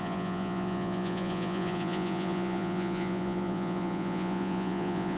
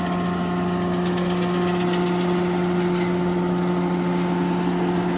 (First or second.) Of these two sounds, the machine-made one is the first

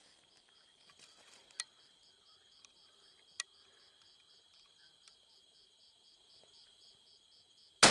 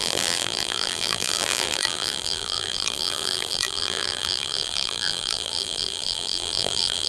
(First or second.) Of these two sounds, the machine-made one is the second